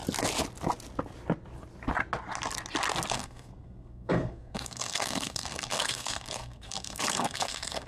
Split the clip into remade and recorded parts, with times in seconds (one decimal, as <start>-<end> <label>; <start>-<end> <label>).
0.0-3.1 recorded; 3.1-7.9 remade